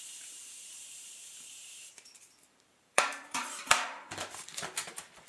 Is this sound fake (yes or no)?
yes